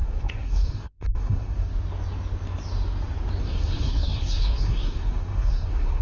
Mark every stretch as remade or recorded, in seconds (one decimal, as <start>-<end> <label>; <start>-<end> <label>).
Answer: 0.0-1.7 remade; 1.7-3.4 recorded; 3.4-6.0 remade